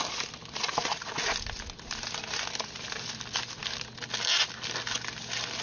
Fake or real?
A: real